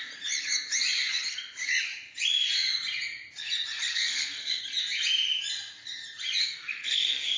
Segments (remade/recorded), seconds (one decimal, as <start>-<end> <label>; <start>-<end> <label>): 0.0-3.9 recorded; 3.9-4.6 remade; 4.6-6.4 recorded; 6.4-7.4 remade